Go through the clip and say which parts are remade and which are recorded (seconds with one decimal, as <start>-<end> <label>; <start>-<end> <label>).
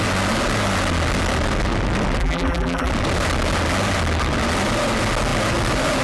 0.0-2.2 recorded; 2.2-2.9 remade; 2.9-6.0 recorded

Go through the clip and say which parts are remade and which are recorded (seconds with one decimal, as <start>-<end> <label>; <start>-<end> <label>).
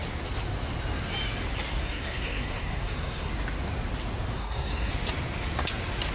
0.0-1.8 recorded; 1.8-3.3 remade; 3.3-4.3 recorded; 4.3-4.9 remade; 4.9-6.1 recorded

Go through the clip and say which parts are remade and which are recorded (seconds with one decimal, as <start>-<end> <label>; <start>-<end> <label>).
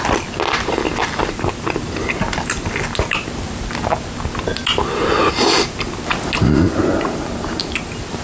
0.0-8.2 recorded